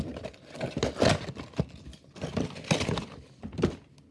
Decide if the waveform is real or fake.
real